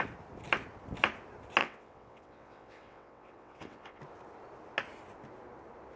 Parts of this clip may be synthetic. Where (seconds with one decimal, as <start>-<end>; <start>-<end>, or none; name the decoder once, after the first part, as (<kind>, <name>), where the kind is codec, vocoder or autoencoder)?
1.6-4.0 (vocoder, WaveNeXt)